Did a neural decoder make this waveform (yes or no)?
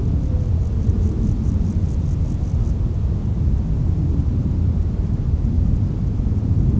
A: yes